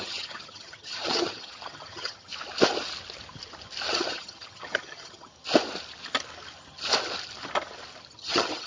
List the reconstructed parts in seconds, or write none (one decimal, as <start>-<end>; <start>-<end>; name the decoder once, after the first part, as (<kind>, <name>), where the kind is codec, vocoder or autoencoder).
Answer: 0.0-2.3 (vocoder, HiFi-GAN); 3.9-5.3; 8.1-8.7